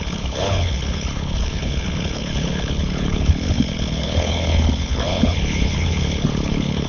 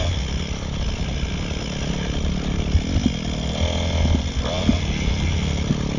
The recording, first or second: second